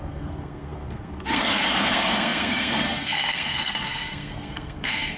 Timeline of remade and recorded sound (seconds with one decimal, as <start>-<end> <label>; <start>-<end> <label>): 0.0-5.2 remade